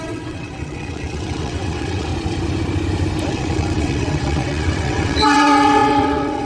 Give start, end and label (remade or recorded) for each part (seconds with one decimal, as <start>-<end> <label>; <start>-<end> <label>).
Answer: 0.0-2.1 remade; 2.1-3.3 recorded; 3.3-6.5 remade

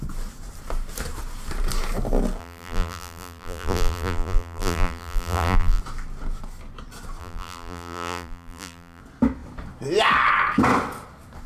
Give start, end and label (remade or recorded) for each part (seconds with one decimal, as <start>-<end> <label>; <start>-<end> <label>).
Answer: 0.0-2.4 recorded; 2.4-5.8 remade; 5.8-7.2 recorded; 7.2-9.0 remade; 9.0-11.5 recorded